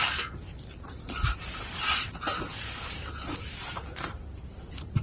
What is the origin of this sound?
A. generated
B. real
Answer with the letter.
A